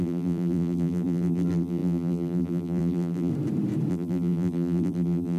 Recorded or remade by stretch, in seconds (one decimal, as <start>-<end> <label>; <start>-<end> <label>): 0.0-3.3 remade; 3.3-3.9 recorded; 3.9-5.4 remade